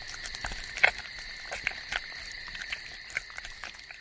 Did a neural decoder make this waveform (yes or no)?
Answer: no